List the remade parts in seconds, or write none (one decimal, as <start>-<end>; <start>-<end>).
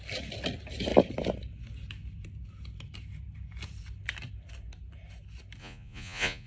5.6-6.5